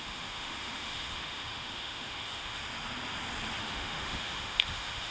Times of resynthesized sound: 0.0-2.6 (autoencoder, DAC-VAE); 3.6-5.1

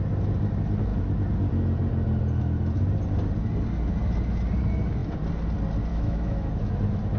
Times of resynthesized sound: 5.9-6.5 (autoencoder, DAC-VAE)

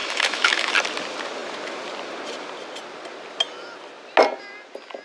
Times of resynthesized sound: 0.0-0.7 (autoencoder, DAC-VAE)

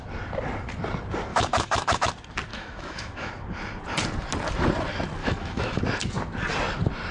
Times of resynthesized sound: 1.3-2.1 (autoencoder, DAC-VAE); 2.5-3.3; 5.2-5.8

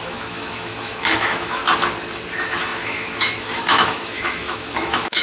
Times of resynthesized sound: 0.0-1.6 (autoencoder, DAC-VAE); 2.3-5.2